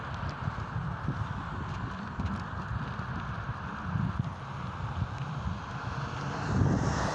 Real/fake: real